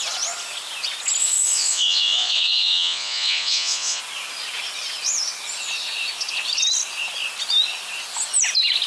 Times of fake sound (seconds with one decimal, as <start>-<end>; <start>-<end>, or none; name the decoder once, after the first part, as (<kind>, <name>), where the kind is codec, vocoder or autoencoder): 1.2-4.0 (vocoder, Vocos)